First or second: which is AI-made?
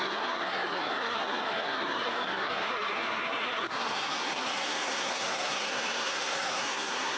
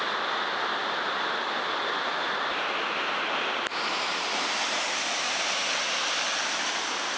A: first